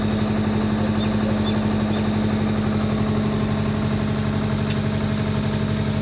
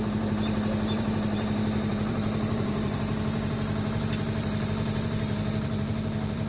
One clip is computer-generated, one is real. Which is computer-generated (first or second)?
second